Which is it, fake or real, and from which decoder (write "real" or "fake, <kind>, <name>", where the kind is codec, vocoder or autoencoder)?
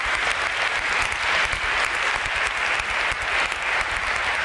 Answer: real